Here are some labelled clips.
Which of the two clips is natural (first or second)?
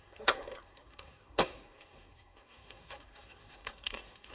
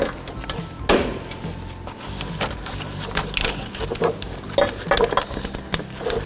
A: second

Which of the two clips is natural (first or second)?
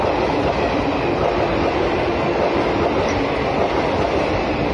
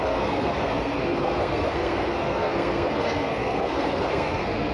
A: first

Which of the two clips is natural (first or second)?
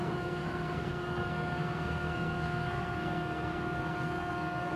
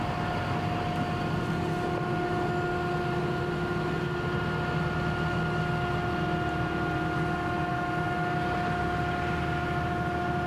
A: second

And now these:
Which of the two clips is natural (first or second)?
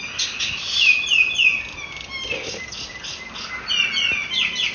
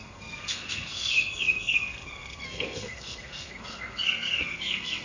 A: first